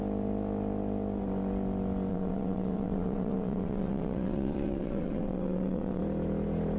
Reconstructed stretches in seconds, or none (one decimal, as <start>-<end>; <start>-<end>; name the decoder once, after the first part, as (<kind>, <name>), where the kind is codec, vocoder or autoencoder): 2.1-6.0 (vocoder, WaveNeXt)